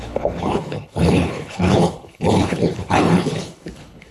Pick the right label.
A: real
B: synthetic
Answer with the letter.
B